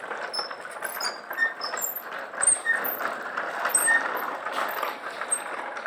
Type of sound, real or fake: real